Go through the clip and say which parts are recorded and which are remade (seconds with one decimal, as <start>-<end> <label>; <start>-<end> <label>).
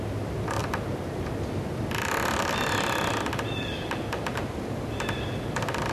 0.0-5.9 recorded